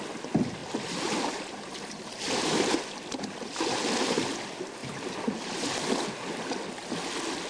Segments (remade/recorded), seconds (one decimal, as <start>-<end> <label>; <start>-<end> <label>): 0.0-0.6 recorded; 0.6-2.8 remade; 2.8-4.8 recorded; 4.8-6.1 remade; 6.1-7.5 recorded